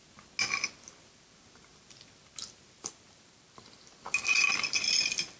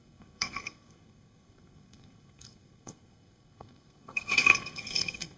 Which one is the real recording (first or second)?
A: first